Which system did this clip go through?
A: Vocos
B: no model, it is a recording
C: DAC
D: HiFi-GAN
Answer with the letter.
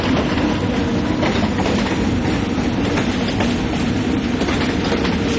B